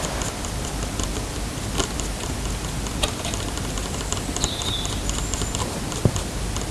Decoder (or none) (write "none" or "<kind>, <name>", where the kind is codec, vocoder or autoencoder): none